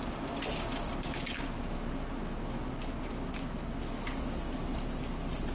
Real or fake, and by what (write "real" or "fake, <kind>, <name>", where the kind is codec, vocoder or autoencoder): real